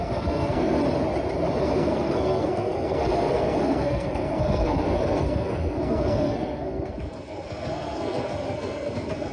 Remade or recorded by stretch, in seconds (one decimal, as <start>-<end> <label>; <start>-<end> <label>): 0.0-0.8 remade; 0.8-1.6 recorded; 1.6-9.3 remade

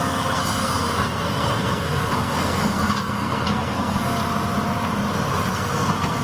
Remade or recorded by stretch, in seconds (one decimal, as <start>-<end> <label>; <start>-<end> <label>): 0.0-4.2 remade; 4.2-5.5 recorded; 5.5-6.2 remade

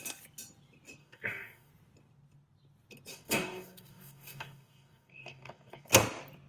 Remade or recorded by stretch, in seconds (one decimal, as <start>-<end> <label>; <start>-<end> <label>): 0.0-1.0 recorded; 1.0-1.7 remade; 1.7-3.1 recorded; 3.1-5.9 remade; 5.9-6.5 recorded

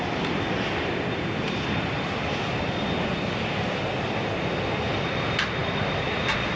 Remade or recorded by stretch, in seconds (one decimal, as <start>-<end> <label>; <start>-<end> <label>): 0.0-5.6 recorded; 5.6-6.6 remade